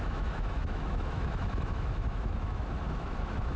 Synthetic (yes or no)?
yes